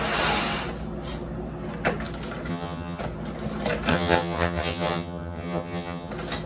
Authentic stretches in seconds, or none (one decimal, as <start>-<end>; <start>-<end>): 0.0-2.5; 3.0-3.9; 6.1-6.5